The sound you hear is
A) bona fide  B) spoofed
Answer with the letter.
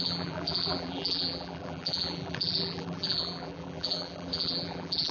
B